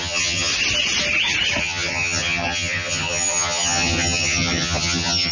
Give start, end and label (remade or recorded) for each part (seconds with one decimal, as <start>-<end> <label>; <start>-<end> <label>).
0.0-0.5 remade; 0.5-1.6 recorded; 1.6-5.3 remade